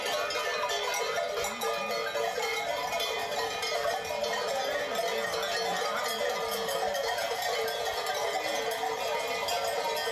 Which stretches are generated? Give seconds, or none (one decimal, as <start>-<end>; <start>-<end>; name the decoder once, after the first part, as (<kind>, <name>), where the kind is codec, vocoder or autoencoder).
2.5-4.6 (vocoder, BigVGAN v2)